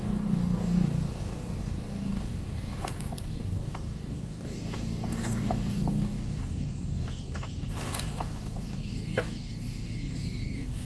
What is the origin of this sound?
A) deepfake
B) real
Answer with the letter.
A